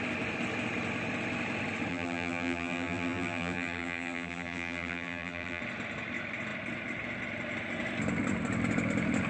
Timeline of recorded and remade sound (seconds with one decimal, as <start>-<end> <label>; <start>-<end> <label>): 0.0-1.9 recorded; 1.9-5.6 remade; 5.6-9.3 recorded